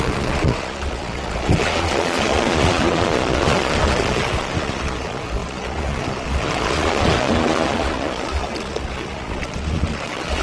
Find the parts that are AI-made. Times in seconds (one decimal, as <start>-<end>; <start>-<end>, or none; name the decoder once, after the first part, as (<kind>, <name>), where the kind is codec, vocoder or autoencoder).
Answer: 0.0-10.4 (vocoder, Vocos)